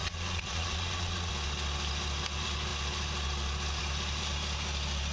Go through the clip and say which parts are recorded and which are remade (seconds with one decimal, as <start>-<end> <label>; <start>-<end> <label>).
0.0-1.3 remade; 1.3-5.1 recorded